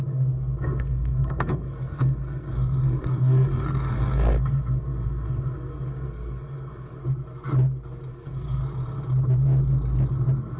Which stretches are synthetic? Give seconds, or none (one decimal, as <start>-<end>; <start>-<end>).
0.0-7.0; 8.1-8.6